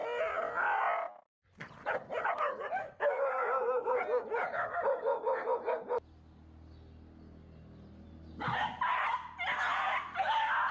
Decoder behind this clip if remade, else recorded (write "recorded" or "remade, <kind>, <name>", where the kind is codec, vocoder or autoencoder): recorded